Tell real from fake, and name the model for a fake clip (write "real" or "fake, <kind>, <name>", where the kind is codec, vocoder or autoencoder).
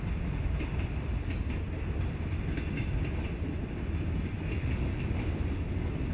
real